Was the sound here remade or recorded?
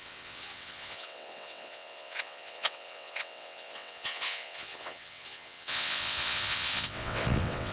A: remade